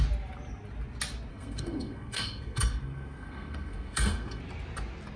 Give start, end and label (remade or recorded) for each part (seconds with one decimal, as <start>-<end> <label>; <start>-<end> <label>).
0.0-1.3 recorded; 1.3-4.4 remade; 4.4-5.2 recorded